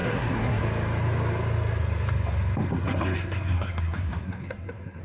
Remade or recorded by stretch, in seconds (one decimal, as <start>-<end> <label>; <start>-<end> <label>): 0.0-0.6 remade; 0.6-2.7 recorded; 2.7-5.0 remade